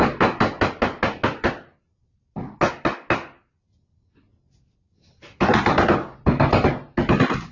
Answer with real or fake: real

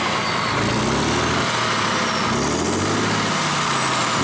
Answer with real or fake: real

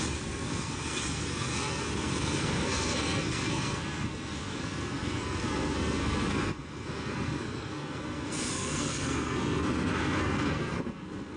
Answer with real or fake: fake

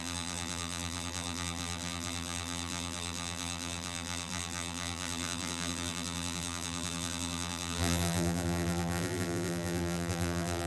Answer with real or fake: fake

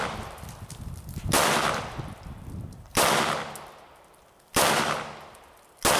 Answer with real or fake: real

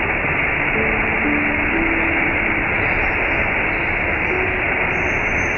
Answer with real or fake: real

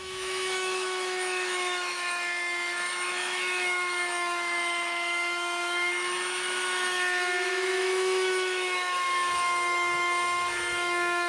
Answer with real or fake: fake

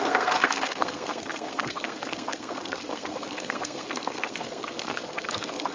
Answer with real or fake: fake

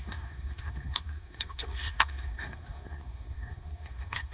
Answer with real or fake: fake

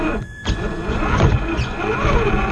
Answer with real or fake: fake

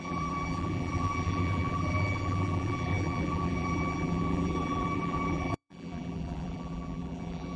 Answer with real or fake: fake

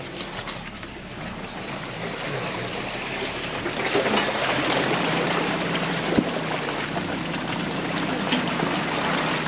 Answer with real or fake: real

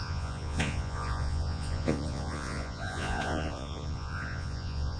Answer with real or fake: fake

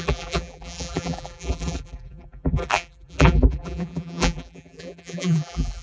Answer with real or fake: fake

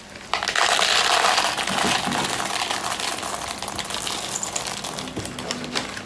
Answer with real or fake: real